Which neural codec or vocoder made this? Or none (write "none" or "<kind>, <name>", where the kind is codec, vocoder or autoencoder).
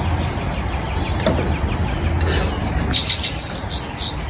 none